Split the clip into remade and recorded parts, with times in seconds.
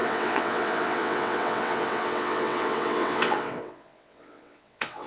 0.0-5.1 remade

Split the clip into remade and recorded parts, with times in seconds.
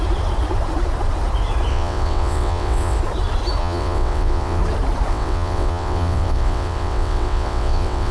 0.0-1.7 recorded; 1.7-3.0 remade; 3.0-3.6 recorded; 3.6-4.6 remade; 4.6-5.1 recorded; 5.1-8.1 remade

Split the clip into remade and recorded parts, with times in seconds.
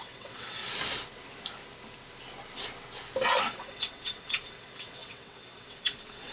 0.0-0.6 remade; 0.6-3.4 recorded; 3.4-6.3 remade